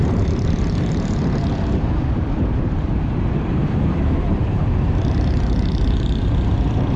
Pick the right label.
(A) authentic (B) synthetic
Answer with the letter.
B